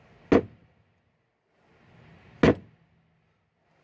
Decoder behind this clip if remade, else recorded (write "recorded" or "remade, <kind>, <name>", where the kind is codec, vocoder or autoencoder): recorded